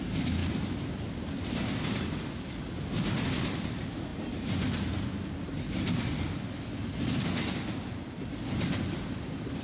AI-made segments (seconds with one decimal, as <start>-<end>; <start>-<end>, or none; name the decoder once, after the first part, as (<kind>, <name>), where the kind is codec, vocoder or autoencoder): none